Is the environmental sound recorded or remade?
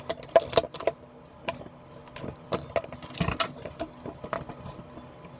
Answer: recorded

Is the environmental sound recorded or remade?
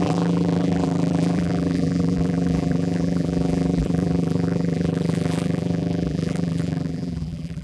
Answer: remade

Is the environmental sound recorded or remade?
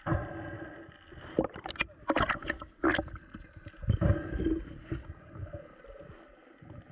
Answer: recorded